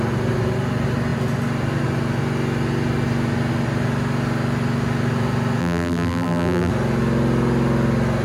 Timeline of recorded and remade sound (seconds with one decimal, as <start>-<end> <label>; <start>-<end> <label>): 0.0-5.6 recorded; 5.6-6.7 remade; 6.7-8.2 recorded